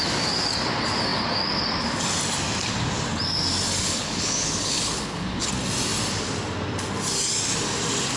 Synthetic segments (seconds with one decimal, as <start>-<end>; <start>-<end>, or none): 3.8-5.5